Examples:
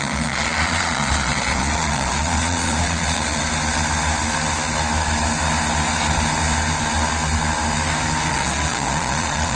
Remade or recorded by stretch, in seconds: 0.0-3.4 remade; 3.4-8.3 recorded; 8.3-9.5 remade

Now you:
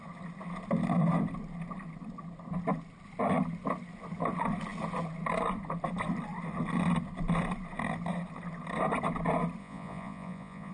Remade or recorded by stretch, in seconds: 0.0-9.6 recorded; 9.6-10.7 remade

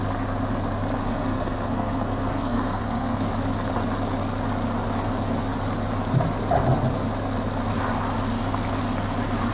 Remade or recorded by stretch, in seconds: 0.0-1.0 recorded; 1.0-3.3 remade; 3.3-9.5 recorded

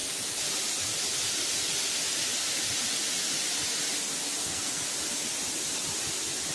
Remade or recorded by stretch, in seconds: 0.0-4.4 recorded; 4.4-4.9 remade; 4.9-6.5 recorded

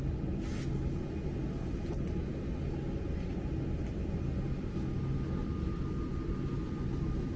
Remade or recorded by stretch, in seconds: 0.0-7.4 recorded